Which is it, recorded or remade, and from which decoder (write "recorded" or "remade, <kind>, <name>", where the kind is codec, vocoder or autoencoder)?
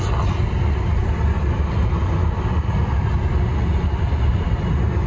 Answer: recorded